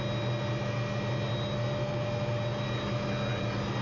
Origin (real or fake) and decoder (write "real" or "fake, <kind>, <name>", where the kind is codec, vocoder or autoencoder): real